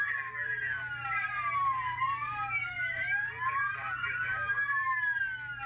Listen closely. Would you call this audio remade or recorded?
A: recorded